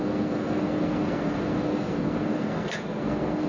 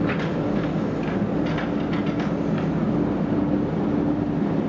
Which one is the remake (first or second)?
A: first